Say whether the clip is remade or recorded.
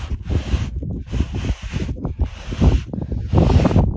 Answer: recorded